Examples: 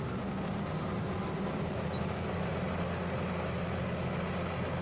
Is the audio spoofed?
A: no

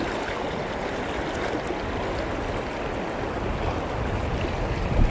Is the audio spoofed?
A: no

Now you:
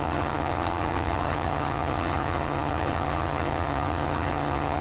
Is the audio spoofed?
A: yes